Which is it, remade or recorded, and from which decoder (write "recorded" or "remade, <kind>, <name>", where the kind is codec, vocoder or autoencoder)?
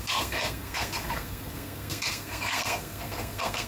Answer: remade, codec, SNAC